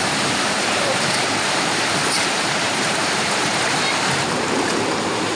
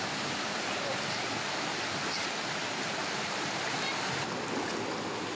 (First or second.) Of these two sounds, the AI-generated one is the first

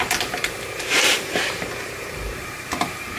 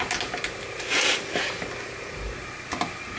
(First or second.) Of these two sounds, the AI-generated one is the first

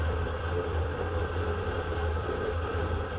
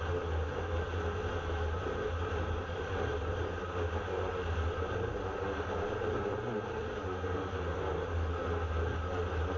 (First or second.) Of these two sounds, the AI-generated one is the first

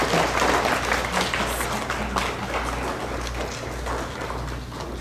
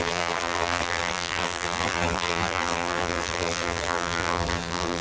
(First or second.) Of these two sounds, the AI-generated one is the second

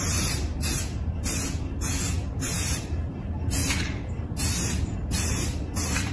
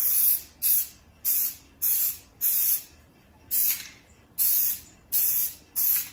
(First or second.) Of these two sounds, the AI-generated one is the first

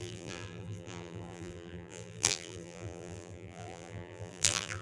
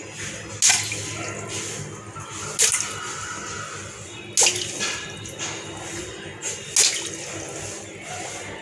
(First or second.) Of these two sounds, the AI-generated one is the first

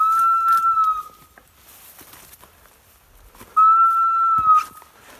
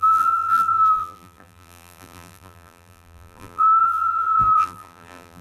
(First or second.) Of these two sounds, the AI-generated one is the second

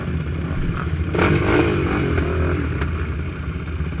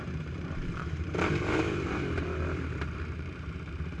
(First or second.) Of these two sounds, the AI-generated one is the second